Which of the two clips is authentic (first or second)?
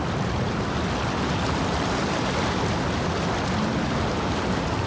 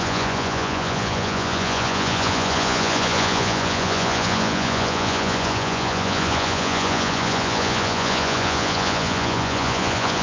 first